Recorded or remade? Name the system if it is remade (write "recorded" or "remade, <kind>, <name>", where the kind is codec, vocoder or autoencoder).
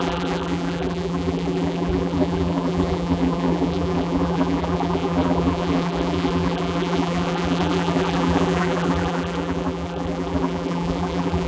remade, vocoder, BigVGAN v2